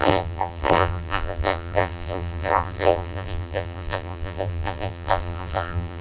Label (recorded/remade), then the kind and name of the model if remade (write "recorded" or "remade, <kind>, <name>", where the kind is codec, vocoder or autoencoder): remade, vocoder, BigVGAN v2